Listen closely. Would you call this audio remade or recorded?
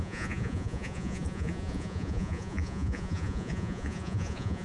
remade